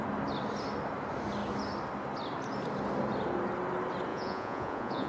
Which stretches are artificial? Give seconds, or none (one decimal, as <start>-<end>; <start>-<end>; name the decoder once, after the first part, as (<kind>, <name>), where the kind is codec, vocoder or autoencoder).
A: 4.1-5.1 (vocoder, Vocos)